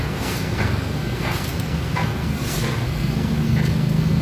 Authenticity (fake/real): fake